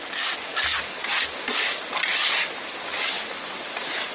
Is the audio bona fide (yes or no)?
yes